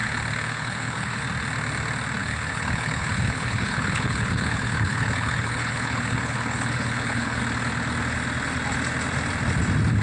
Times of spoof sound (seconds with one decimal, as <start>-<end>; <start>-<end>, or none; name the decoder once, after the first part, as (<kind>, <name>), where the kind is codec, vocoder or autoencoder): 0.0-1.2 (codec, HILCodec); 2.2-7.4